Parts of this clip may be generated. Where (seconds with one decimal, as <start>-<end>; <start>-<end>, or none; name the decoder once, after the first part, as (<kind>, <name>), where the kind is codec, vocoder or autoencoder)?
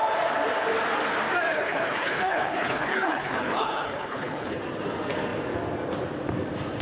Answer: 1.5-4.6 (codec, HILCodec)